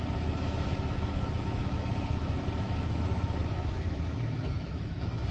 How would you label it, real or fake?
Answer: fake